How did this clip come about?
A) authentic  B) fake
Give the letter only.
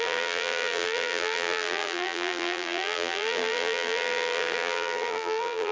B